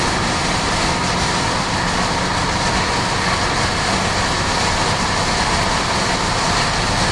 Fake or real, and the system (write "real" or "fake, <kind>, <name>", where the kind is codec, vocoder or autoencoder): real